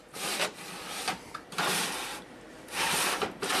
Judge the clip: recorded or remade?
recorded